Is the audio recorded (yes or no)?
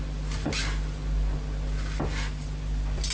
yes